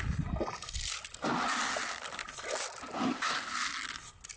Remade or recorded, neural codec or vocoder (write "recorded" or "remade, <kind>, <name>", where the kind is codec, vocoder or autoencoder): recorded